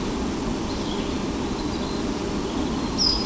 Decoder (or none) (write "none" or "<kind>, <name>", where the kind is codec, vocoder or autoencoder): none